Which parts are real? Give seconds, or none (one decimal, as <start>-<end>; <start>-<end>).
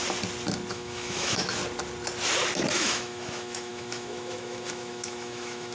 0.0-0.7; 1.6-2.7